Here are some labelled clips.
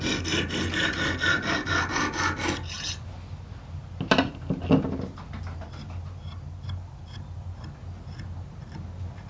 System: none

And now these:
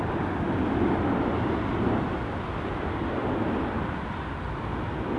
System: none